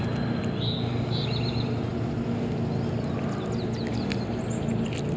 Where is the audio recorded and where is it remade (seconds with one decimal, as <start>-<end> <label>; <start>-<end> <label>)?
0.0-5.2 recorded